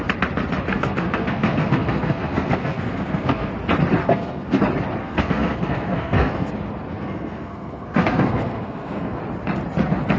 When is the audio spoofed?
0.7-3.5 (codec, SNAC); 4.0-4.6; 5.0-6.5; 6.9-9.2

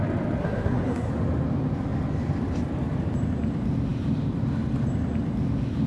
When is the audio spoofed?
0.4-1.1 (codec, SNAC)